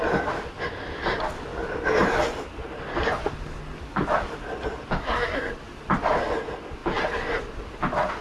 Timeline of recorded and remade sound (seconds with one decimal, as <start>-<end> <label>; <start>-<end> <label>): 0.0-5.0 recorded; 5.0-5.5 remade; 5.5-8.2 recorded